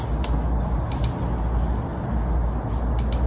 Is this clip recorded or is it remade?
recorded